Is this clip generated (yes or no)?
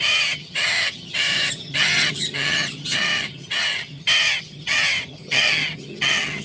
yes